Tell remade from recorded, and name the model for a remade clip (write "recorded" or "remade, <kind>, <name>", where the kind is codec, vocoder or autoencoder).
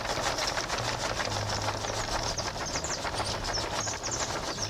recorded